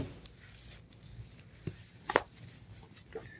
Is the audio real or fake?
real